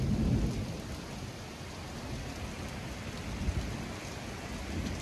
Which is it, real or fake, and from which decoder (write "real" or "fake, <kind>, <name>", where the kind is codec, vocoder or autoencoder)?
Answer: real